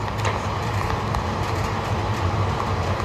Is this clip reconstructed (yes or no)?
no